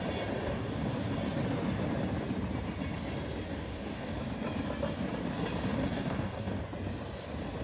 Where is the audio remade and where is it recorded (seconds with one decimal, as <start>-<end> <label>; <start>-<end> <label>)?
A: 0.0-0.4 recorded; 0.4-1.0 remade; 1.0-3.5 recorded; 3.5-4.2 remade; 4.2-5.7 recorded; 5.7-6.6 remade; 6.6-7.6 recorded